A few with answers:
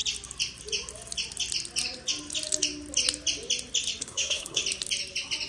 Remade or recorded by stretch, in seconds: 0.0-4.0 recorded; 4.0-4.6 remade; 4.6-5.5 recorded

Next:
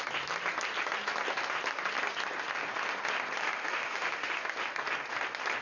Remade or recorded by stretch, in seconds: 0.0-3.4 recorded; 3.4-4.3 remade; 4.3-5.6 recorded

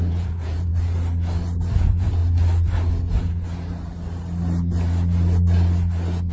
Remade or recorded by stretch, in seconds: 0.0-0.7 remade; 0.7-1.8 recorded; 1.8-2.2 remade; 2.2-6.3 recorded